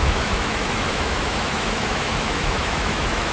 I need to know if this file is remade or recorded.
remade